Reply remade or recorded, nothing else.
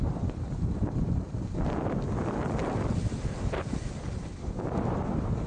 recorded